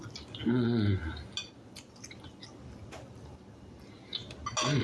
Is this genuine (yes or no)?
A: yes